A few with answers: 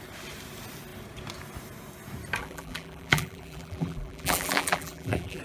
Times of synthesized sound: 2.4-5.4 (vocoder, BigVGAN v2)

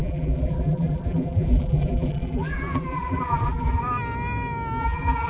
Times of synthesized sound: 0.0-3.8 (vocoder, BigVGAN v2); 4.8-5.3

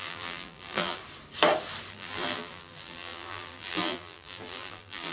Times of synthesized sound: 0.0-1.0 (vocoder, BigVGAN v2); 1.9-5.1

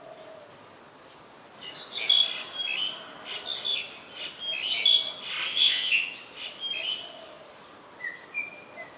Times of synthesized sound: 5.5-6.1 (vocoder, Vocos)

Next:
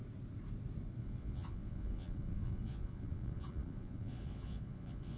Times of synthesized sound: 1.0-5.2 (vocoder, Vocos)

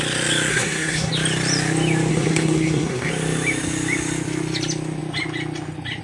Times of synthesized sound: 0.5-1.1 (codec, SNAC); 2.1-3.1

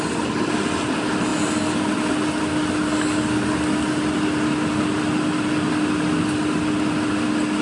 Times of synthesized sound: none